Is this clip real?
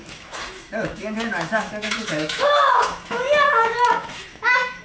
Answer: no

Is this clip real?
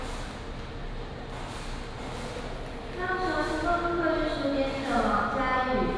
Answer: yes